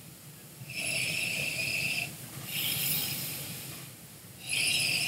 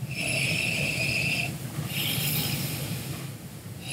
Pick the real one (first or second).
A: second